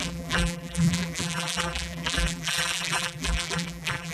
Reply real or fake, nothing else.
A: fake